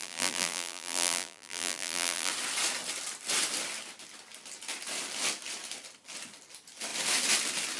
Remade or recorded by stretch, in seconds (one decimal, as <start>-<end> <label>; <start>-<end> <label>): 0.0-2.3 remade; 2.3-7.8 recorded